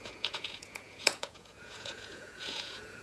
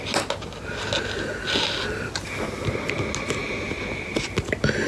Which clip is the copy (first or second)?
first